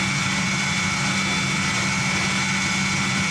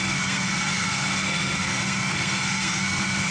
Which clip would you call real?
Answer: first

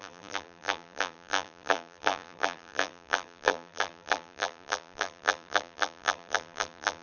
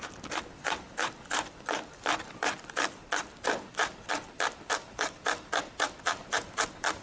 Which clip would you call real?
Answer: second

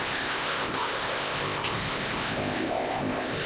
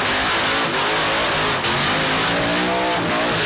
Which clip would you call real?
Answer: second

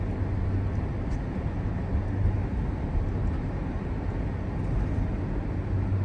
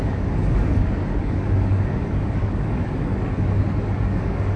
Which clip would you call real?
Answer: first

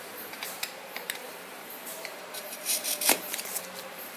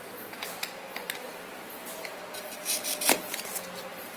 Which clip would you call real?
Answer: second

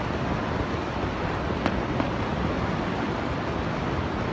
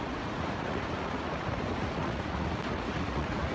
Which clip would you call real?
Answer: first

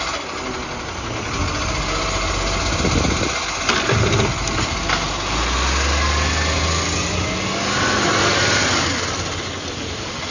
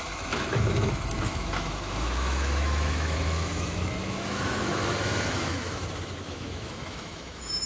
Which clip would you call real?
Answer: first